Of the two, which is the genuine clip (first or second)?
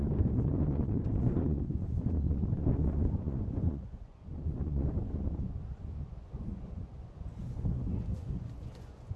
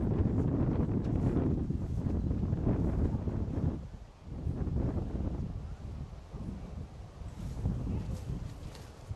second